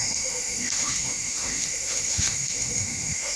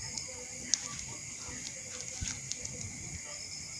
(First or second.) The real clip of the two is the second